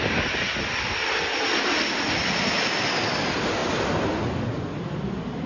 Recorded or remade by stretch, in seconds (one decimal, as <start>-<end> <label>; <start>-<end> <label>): 0.0-5.5 recorded